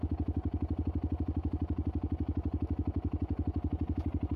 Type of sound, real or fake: real